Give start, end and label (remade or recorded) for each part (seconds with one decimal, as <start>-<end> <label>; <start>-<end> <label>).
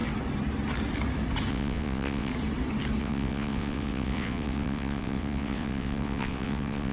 0.0-1.5 recorded; 1.5-2.3 remade; 2.3-3.0 recorded; 3.0-6.9 remade